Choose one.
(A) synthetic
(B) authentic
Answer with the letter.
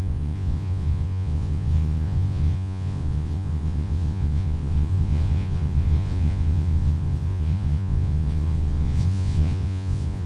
A